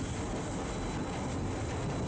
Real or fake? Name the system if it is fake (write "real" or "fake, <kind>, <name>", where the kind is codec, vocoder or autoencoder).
real